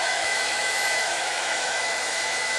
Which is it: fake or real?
fake